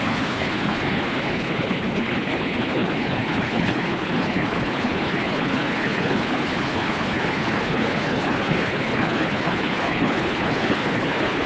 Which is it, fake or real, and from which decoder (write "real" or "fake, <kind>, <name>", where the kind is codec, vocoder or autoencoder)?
fake, codec, HILCodec